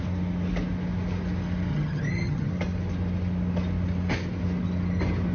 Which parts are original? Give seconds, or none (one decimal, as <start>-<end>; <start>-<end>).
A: 0.0-1.7; 2.5-5.3